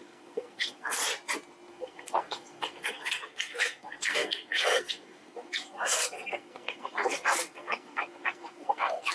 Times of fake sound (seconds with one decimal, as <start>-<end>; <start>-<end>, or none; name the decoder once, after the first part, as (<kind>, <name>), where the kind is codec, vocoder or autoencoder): 0.0-1.0 (codec, SNAC); 1.7-9.1